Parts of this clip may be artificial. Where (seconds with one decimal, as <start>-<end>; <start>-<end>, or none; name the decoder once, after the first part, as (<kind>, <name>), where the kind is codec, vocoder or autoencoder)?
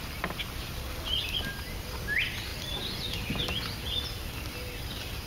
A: none